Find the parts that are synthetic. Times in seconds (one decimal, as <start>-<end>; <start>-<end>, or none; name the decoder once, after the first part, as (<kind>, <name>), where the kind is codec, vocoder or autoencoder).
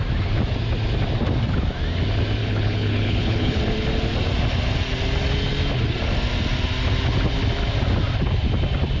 2.4-3.6 (codec, HILCodec)